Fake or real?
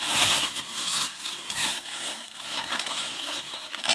fake